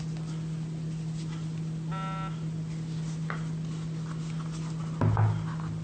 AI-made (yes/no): no